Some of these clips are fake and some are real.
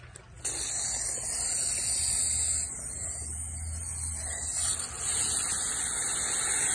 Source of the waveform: real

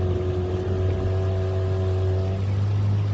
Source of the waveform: real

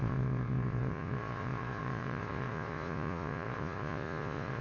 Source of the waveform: fake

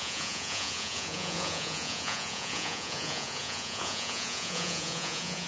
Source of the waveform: fake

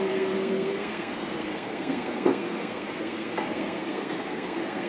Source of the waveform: fake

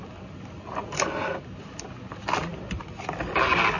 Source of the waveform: real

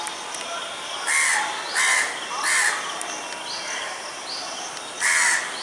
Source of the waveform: real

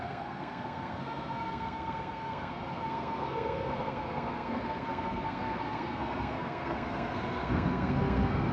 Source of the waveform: fake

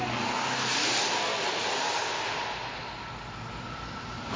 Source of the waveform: real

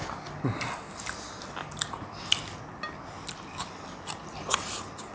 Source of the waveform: real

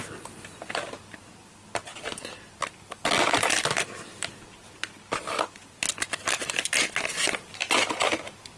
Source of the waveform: real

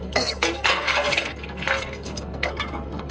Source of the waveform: fake